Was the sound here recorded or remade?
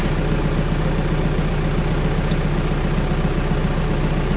recorded